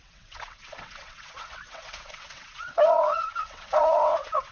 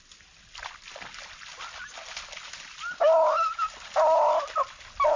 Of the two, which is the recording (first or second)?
second